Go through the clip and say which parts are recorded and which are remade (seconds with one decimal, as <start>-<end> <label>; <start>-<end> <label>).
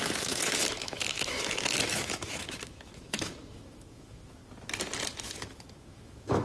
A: 0.0-4.4 remade; 4.4-5.2 recorded; 5.2-6.4 remade